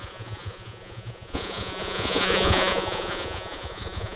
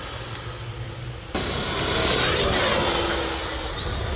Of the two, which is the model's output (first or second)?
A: first